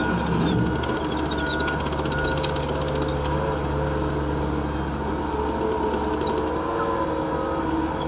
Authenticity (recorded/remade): recorded